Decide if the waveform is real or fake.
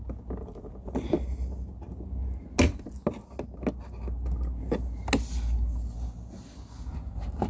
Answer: real